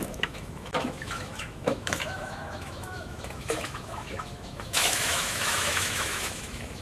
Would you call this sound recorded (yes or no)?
no